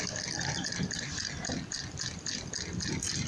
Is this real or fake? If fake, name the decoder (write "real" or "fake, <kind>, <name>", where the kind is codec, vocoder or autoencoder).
real